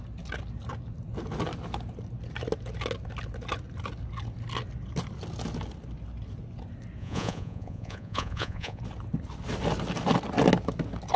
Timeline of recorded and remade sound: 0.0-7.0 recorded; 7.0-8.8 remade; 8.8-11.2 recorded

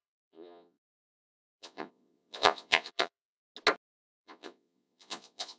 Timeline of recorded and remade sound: 0.0-3.4 remade; 3.4-4.2 recorded; 4.2-5.6 remade

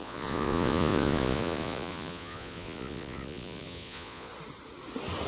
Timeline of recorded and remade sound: 0.0-4.3 remade; 4.3-5.3 recorded

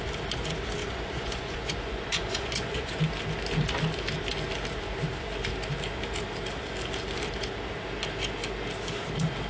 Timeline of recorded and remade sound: 0.0-0.8 recorded; 0.8-3.0 remade; 3.0-9.5 recorded

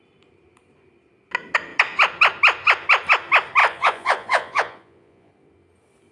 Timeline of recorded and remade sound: 0.0-3.6 recorded; 3.6-5.3 remade; 5.3-6.1 recorded

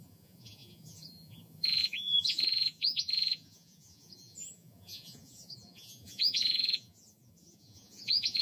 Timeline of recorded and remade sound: 0.0-8.4 remade